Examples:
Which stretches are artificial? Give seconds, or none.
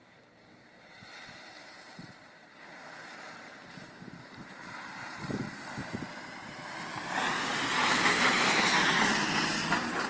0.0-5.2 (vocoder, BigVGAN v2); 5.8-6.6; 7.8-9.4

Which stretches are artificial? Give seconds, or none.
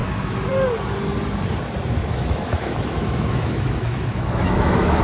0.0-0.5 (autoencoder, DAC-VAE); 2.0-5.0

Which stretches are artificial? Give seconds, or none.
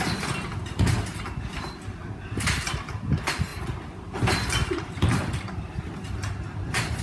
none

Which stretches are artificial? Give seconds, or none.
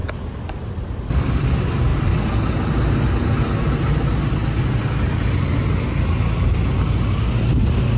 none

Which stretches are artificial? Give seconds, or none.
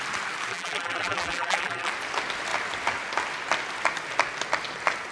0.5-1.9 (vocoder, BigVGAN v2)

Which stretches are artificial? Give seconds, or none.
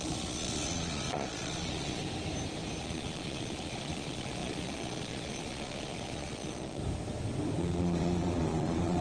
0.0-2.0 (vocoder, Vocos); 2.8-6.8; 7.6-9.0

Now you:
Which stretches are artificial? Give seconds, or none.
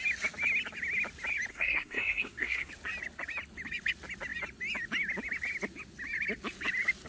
1.5-2.7 (codec, SNAC)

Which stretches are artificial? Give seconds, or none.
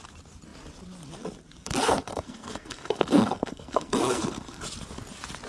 1.6-4.6 (codec, SNAC)